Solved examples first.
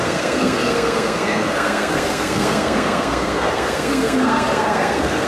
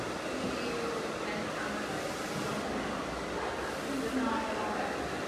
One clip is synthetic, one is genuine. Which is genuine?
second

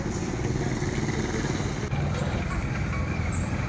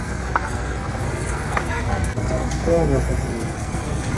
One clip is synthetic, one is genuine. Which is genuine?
first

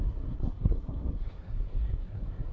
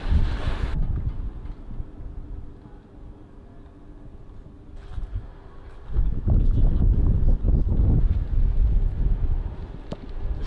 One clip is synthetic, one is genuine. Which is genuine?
second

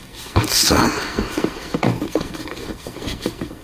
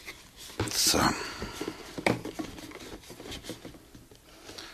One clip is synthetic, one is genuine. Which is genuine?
second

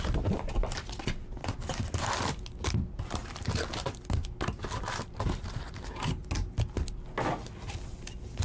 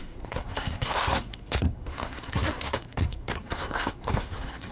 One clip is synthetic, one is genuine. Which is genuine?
first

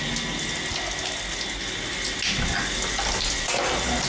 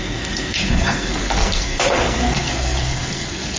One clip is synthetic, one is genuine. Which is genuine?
first